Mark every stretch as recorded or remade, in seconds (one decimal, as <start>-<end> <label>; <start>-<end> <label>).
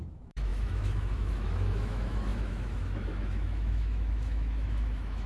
0.0-5.3 remade